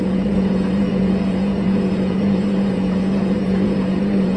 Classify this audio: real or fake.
fake